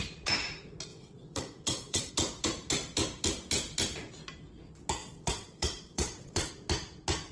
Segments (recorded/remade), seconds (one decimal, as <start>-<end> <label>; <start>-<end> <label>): 0.0-0.9 recorded; 0.9-2.1 remade; 2.1-5.0 recorded; 5.0-6.5 remade; 6.5-7.3 recorded